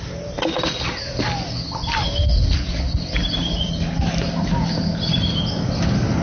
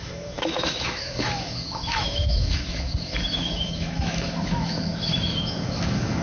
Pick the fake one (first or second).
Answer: second